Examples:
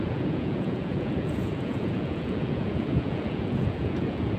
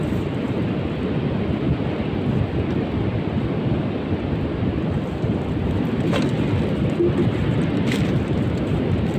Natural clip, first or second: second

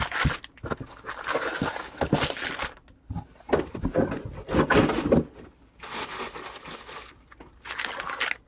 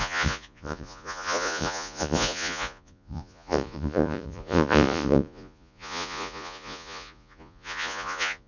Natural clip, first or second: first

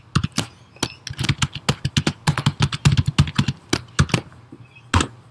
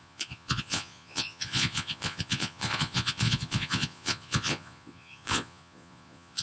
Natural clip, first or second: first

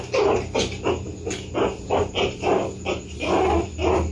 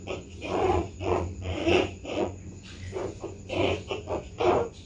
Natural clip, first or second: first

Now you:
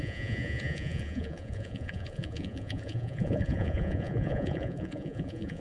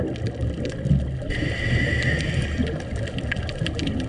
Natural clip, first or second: second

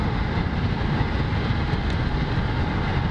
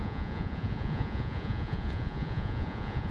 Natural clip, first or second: first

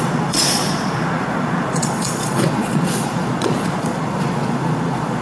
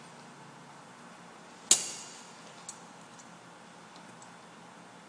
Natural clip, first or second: second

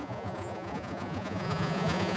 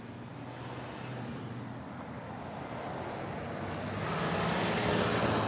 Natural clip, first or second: second